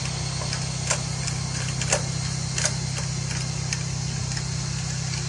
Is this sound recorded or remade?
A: recorded